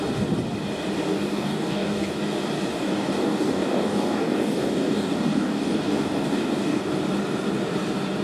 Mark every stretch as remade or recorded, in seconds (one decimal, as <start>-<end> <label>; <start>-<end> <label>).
0.0-1.1 recorded; 1.1-2.2 remade; 2.2-2.7 recorded; 2.7-6.8 remade; 6.8-8.2 recorded